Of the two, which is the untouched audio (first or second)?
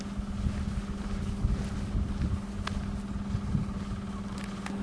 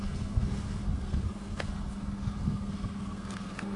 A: first